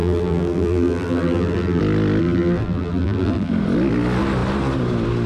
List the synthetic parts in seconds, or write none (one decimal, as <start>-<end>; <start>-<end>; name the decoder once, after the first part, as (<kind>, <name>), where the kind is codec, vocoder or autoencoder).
0.0-1.8 (vocoder, BigVGAN v2); 2.2-3.5